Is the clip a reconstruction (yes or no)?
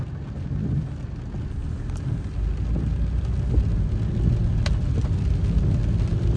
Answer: no